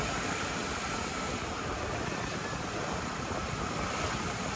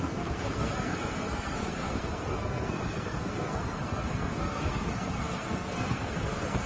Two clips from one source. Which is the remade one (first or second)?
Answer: second